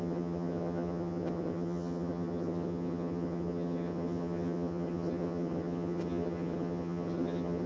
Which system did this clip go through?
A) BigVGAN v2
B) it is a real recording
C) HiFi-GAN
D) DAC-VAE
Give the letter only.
C